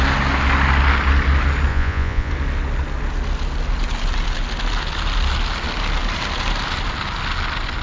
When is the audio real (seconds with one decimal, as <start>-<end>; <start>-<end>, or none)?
0.0-1.7; 2.3-7.8